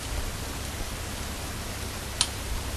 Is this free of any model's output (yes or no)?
yes